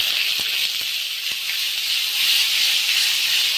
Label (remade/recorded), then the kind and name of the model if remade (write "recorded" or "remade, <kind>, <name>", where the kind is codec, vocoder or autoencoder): recorded